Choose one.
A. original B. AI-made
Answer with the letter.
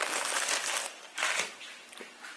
A